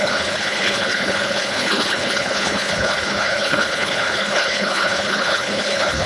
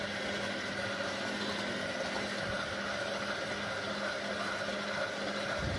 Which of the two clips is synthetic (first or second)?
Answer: first